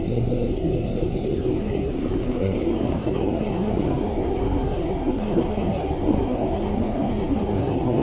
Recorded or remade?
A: remade